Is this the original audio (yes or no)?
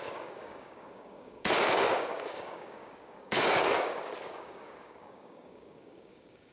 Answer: no